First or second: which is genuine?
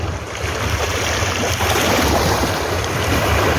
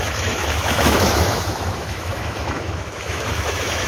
first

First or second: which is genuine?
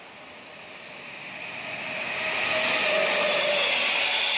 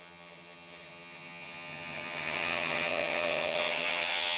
first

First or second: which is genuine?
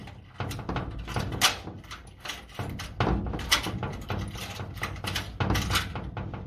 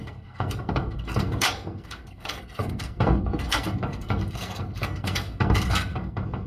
first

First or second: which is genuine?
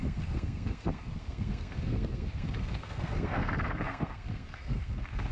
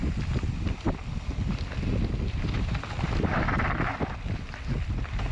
second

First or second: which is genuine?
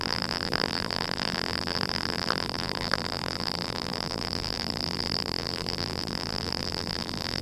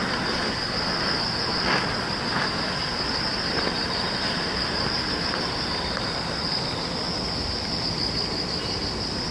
second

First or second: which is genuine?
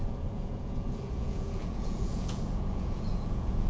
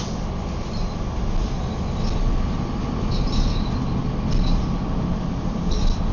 second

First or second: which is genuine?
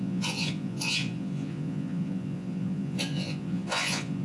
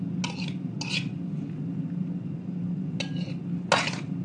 second